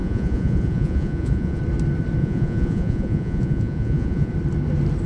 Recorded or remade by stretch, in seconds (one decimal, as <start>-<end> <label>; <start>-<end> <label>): 0.0-1.6 remade; 1.6-2.2 recorded; 2.2-4.3 remade; 4.3-5.1 recorded